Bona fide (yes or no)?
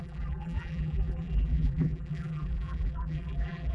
no